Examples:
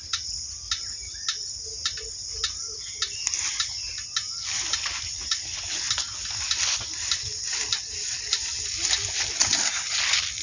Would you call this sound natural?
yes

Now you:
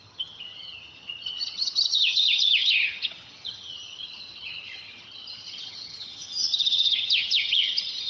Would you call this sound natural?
no